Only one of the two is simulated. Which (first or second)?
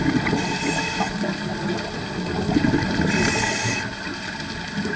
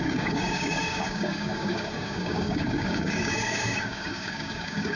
second